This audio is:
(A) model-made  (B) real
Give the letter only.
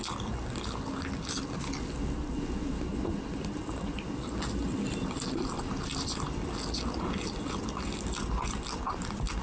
B